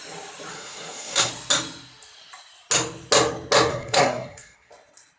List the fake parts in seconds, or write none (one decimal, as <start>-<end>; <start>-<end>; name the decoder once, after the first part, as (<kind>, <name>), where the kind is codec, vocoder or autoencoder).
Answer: 0.5-1.3 (codec, SNAC); 3.7-4.7